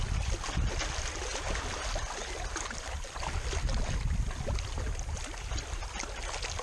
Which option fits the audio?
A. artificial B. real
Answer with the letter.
B